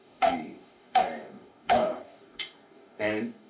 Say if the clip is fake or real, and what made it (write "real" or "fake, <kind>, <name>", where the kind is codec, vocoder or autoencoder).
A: fake, codec, DAC